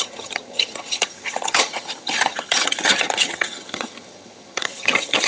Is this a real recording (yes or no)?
no